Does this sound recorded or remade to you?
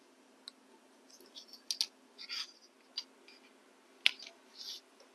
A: recorded